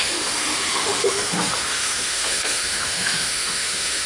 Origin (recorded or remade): remade